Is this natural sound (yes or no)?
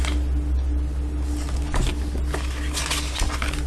yes